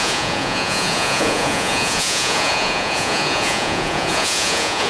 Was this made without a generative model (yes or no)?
no